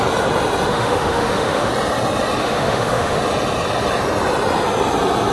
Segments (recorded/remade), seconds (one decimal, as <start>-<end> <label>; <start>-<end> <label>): 0.0-0.7 recorded; 0.7-1.7 remade; 1.7-2.4 recorded; 2.4-3.2 remade; 3.2-5.3 recorded